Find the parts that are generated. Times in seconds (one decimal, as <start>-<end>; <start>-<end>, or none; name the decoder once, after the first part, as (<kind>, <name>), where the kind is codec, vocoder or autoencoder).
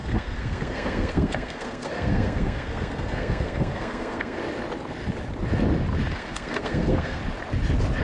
0.0-4.4 (codec, SNAC); 6.1-7.2